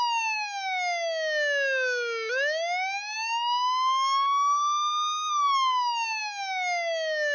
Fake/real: real